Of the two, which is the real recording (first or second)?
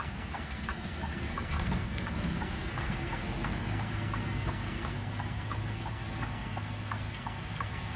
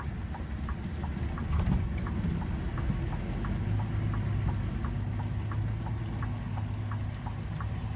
second